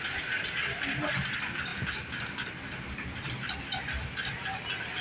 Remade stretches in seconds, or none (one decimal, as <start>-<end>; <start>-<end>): none